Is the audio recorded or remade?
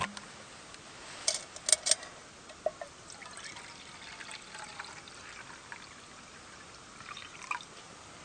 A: recorded